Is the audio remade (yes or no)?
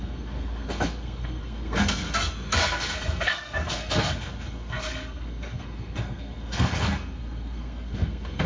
yes